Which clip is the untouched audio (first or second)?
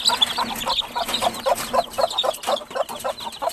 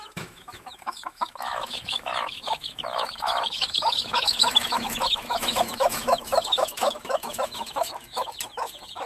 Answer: first